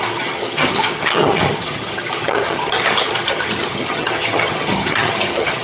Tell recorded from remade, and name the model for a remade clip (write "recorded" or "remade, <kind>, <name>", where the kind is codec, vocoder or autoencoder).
remade, vocoder, HiFi-GAN